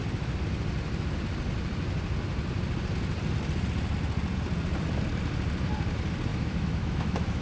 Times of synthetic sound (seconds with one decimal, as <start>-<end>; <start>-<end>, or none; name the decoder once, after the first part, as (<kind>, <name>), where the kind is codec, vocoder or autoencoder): 6.3-7.4 (autoencoder, DAC-VAE)